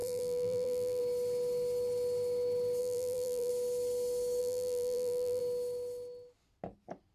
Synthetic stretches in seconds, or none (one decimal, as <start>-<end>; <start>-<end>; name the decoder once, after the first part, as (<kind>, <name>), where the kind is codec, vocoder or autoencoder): 0.0-1.0 (vocoder, BigVGAN v2); 2.8-3.5; 4.4-5.4